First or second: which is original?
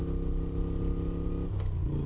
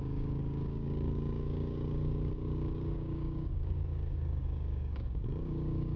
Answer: first